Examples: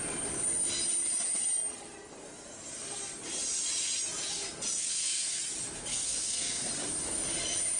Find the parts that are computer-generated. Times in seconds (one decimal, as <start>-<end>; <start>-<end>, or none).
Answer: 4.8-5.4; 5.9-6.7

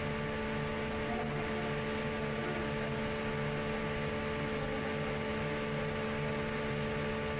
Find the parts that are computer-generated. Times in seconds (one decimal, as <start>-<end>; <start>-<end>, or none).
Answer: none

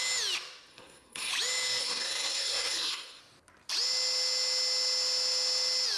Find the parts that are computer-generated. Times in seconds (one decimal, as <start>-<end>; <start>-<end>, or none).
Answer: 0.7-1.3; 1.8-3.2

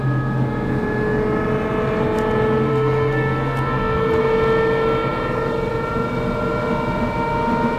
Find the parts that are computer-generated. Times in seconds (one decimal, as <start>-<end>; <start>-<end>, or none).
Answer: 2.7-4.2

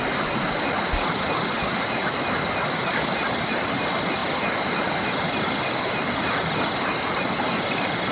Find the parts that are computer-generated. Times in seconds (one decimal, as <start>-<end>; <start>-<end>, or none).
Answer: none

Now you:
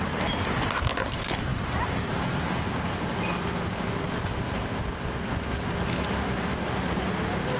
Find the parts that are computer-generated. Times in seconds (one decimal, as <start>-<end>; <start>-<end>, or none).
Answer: none